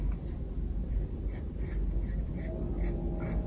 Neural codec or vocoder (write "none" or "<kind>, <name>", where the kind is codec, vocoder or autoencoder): none